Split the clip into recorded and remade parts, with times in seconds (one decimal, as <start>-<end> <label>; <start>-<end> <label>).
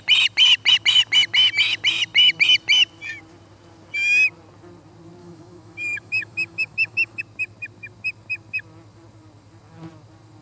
0.0-5.2 recorded; 5.2-7.2 remade; 7.2-10.4 recorded